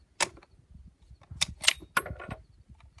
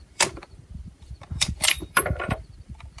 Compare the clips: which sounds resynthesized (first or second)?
second